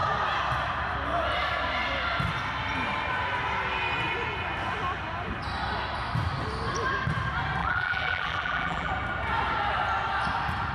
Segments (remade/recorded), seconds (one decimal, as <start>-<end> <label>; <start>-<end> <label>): 0.0-7.6 recorded; 7.6-8.9 remade; 8.9-10.7 recorded